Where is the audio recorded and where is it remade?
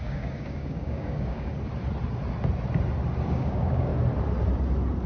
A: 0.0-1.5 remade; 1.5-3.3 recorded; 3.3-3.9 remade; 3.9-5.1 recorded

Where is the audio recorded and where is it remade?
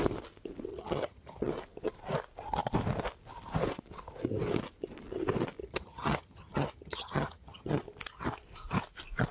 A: 0.0-0.7 recorded; 0.7-1.5 remade; 1.5-5.6 recorded; 5.6-7.8 remade; 7.8-9.3 recorded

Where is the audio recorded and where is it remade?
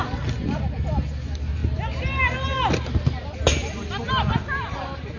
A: 0.0-5.2 recorded